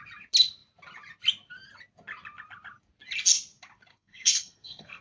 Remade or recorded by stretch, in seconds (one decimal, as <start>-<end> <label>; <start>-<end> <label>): 0.0-3.9 recorded; 3.9-5.0 remade